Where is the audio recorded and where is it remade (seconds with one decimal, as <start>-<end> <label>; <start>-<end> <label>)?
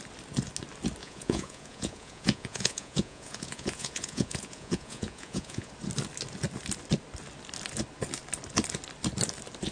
0.0-1.0 recorded; 1.0-5.7 remade; 5.7-9.7 recorded